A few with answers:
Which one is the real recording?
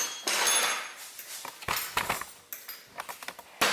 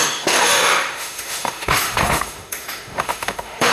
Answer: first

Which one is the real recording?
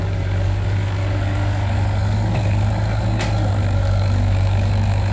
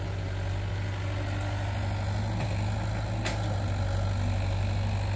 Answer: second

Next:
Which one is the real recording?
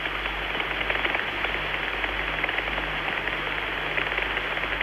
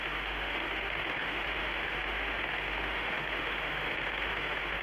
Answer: first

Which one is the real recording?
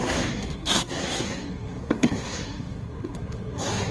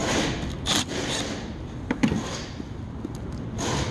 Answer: second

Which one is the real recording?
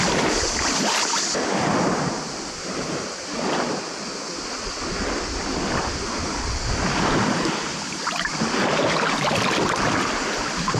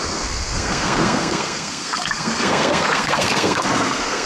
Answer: first